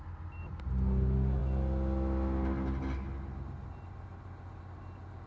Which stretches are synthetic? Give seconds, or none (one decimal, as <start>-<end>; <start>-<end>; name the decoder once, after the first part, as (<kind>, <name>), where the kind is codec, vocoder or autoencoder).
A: none